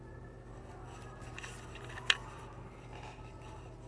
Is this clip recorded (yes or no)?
yes